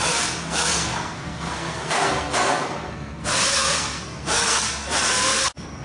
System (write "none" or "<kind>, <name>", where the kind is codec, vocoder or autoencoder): codec, SNAC